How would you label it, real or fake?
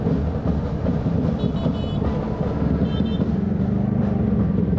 real